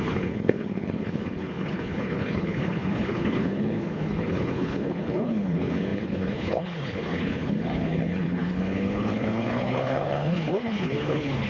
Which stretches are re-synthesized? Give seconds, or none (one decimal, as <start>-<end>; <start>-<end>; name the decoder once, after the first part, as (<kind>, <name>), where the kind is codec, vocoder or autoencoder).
0.0-11.5 (codec, HILCodec)